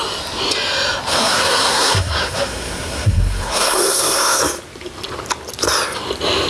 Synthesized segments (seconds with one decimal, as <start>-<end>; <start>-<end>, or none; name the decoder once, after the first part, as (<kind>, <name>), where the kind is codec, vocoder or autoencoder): 1.1-4.4 (codec, SNAC)